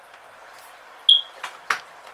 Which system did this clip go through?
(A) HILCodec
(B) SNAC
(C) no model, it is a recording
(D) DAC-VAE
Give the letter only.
C